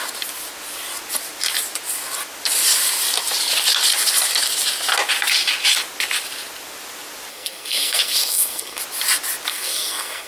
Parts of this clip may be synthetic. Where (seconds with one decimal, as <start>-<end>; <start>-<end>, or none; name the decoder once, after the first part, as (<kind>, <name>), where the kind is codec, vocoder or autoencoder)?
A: 7.3-8.8 (codec, SNAC); 9.5-10.3